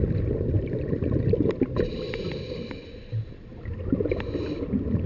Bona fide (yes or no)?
yes